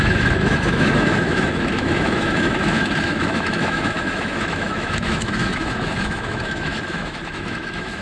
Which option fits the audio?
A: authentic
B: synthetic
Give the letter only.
B